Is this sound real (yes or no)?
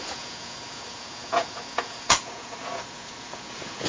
no